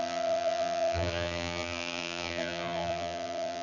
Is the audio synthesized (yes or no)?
yes